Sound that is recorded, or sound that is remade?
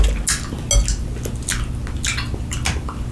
recorded